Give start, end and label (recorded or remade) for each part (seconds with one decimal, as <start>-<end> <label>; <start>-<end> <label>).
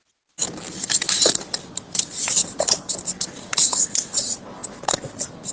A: 0.0-5.5 recorded